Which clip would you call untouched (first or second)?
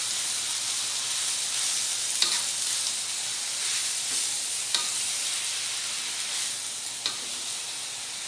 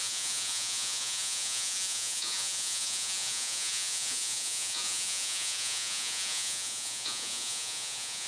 first